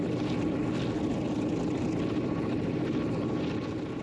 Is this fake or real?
real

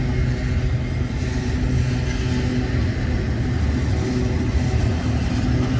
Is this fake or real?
real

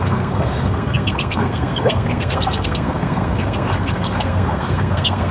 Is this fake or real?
fake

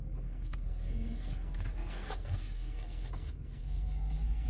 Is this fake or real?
fake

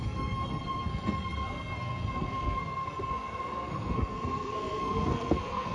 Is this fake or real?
fake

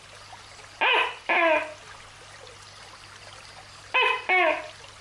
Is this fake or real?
real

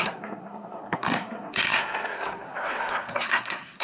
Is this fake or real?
fake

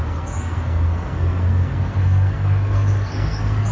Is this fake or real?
fake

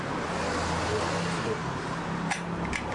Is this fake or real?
real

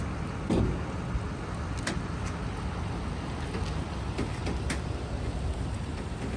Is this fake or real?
real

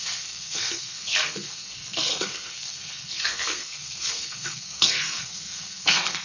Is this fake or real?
fake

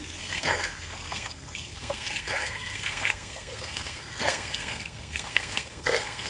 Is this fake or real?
fake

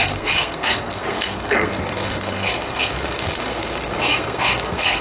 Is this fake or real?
fake